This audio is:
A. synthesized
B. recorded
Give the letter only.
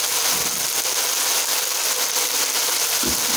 B